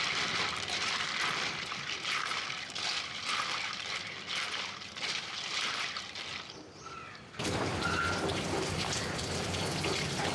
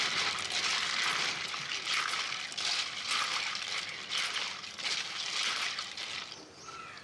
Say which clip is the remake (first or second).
first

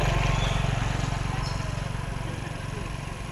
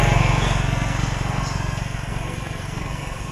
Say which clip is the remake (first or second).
second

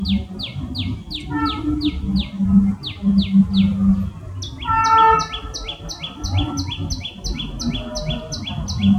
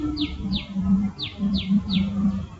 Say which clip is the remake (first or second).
second